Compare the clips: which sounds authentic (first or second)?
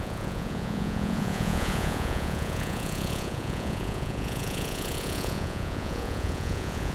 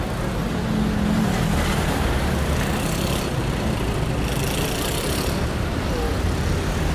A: second